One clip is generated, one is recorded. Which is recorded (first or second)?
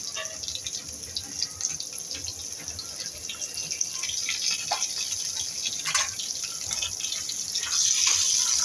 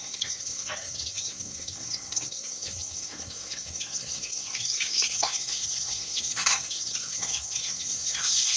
first